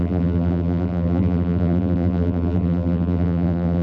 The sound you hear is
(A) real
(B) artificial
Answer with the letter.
B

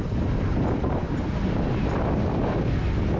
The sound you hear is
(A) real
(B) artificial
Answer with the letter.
A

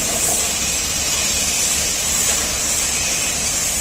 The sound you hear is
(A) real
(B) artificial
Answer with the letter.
A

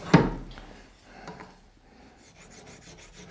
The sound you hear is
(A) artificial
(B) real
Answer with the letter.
B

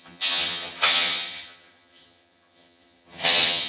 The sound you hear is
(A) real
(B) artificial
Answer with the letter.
B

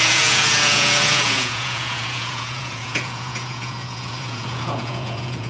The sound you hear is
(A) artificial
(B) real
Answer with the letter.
A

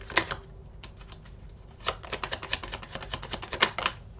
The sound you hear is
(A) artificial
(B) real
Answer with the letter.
B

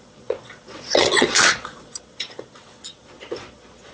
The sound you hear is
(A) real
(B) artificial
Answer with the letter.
B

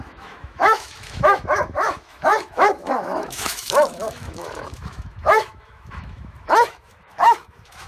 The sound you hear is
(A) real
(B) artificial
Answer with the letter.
B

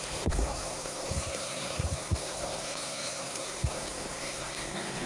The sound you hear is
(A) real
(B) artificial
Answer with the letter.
B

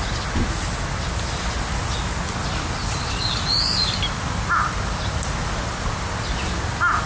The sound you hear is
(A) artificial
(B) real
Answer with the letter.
B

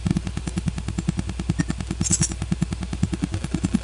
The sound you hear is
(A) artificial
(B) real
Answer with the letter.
B